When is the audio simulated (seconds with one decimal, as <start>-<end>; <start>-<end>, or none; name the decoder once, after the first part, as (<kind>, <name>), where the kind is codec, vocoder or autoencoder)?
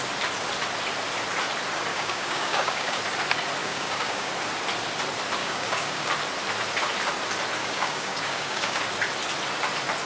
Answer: 1.9-3.0 (codec, DAC); 3.6-4.3; 5.4-6.1; 7.6-8.8